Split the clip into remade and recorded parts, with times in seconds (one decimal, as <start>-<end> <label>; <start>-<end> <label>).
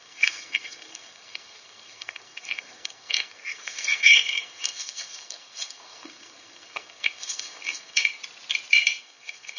0.0-8.2 remade; 8.2-9.0 recorded; 9.0-9.6 remade